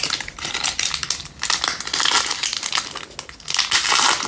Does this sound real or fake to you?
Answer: real